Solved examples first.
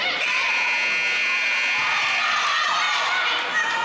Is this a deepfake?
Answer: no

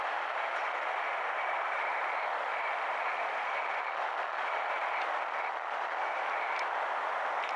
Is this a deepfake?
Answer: yes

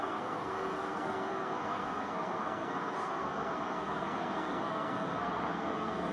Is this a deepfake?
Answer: yes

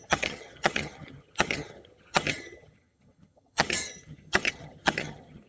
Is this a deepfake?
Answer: yes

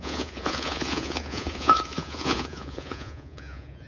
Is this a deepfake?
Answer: yes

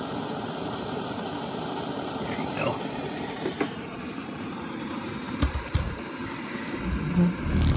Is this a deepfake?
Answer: yes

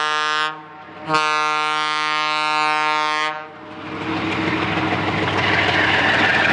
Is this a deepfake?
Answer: no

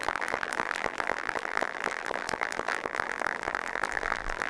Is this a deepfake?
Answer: yes